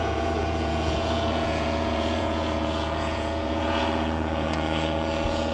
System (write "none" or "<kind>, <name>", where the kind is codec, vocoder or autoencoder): vocoder, Vocos